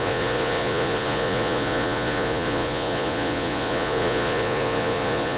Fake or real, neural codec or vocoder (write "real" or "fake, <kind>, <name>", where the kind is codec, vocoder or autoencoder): fake, vocoder, Vocos